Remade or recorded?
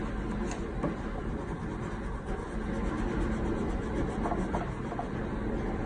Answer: recorded